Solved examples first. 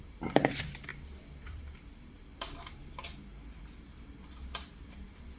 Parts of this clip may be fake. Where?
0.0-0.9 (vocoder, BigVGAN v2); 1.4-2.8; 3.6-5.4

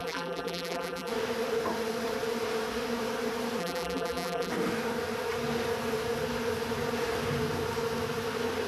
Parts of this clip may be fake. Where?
0.0-1.1 (vocoder, BigVGAN v2); 3.6-4.5

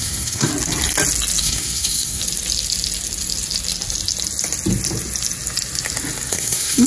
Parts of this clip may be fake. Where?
0.0-0.5 (codec, SNAC); 1.4-2.2; 6.3-6.9

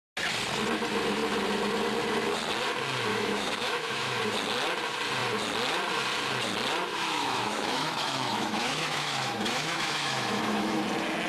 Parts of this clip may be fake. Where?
3.1-4.2 (autoencoder, DAC-VAE); 6.9-10.8

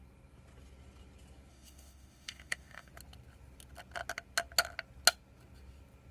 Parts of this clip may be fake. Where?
1.5-2.9 (autoencoder, DAC-VAE)

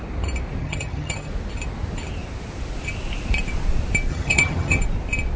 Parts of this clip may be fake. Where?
0.6-1.3 (vocoder, HiFi-GAN); 4.1-4.8

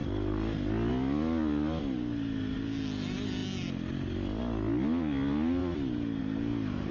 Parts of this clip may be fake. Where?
none